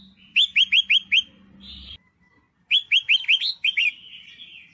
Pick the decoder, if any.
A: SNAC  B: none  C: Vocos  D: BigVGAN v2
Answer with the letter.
B